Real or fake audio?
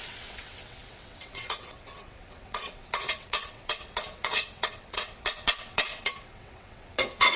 fake